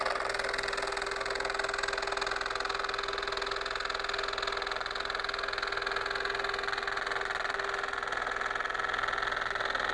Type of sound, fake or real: real